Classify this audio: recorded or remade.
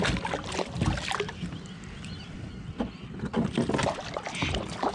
recorded